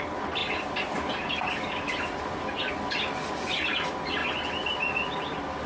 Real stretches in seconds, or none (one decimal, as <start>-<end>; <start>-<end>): 0.0-5.7